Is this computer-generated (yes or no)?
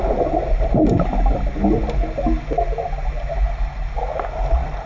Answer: no